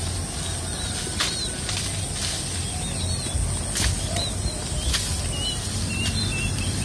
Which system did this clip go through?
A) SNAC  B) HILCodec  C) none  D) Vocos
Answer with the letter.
C